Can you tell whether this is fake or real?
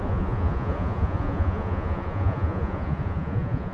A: fake